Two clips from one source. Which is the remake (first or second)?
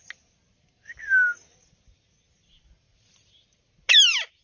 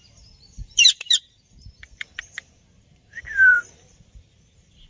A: second